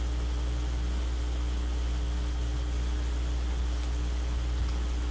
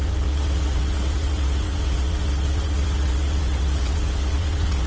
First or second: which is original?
first